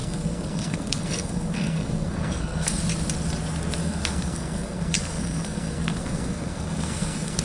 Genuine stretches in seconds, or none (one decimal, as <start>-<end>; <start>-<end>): 2.8-3.8